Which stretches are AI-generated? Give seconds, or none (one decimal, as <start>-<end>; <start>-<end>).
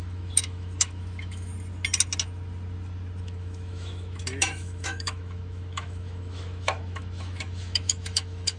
0.0-1.5; 3.2-8.6